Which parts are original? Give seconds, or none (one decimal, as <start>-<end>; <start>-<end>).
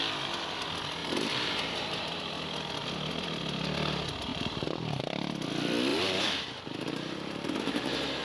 0.0-1.0; 2.2-4.3; 5.0-5.9